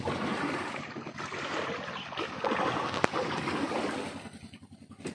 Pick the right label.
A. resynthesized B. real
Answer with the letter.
B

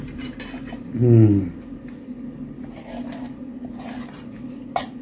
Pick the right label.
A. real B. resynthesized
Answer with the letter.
A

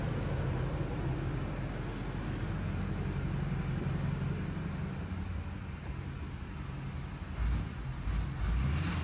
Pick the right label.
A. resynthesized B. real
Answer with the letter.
B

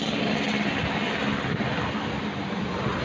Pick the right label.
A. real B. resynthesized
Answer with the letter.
A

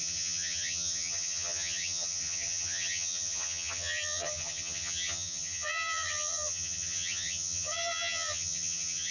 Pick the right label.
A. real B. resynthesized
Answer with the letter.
B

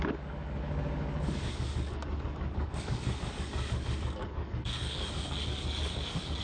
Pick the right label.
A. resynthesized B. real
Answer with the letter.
A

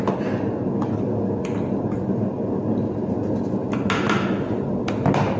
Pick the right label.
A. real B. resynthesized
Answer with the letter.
A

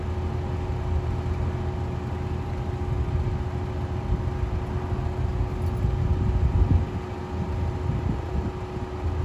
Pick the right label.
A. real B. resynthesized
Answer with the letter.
A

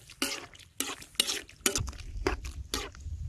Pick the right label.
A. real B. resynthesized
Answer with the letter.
A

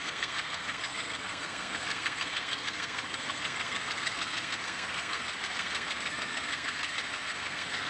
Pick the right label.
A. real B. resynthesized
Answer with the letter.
B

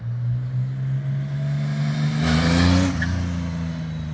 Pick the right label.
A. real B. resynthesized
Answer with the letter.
A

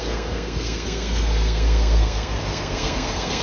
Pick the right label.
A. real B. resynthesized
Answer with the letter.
B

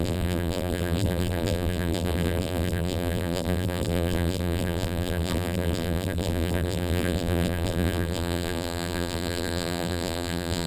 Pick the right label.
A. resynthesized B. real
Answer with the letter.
A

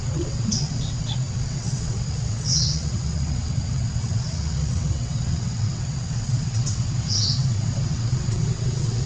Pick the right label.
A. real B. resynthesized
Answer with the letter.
B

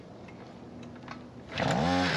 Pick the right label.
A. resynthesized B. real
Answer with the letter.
B